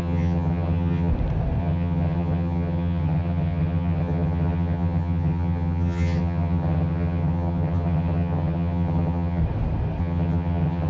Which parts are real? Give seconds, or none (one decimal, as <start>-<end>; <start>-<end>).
1.1-1.6; 9.4-10.0